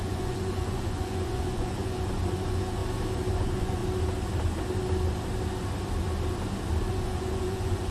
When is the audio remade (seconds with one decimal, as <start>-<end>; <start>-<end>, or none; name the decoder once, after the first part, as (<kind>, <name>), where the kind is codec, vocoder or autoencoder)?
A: 0.0-2.8 (vocoder, Vocos); 3.3-3.8; 6.9-7.9